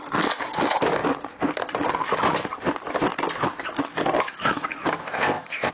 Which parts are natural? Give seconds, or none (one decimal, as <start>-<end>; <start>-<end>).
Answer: 0.0-5.0